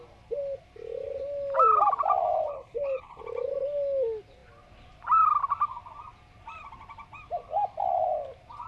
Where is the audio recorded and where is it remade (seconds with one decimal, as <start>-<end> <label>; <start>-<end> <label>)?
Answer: 0.0-2.5 recorded; 2.5-3.2 remade; 3.2-8.7 recorded